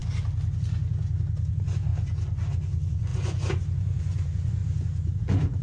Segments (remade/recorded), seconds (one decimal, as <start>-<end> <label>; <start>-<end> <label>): 0.0-1.5 recorded; 1.5-1.9 remade; 1.9-2.5 recorded; 2.5-4.6 remade; 4.6-5.1 recorded; 5.1-5.6 remade